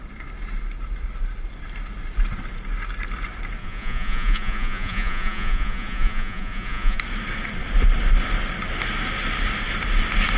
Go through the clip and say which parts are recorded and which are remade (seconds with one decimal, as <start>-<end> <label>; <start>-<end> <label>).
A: 0.0-3.6 recorded; 3.6-7.0 remade; 7.0-10.4 recorded